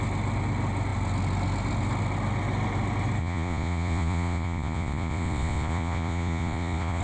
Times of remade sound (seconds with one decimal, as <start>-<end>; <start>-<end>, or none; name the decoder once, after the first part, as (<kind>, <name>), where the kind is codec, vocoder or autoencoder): 3.2-7.0 (vocoder, Vocos)